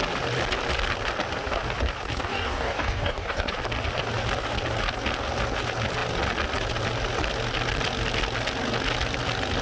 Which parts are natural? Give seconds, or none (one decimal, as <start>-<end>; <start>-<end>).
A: 0.0-2.3; 3.5-9.6